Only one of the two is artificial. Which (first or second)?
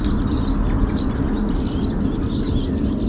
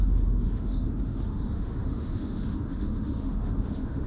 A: second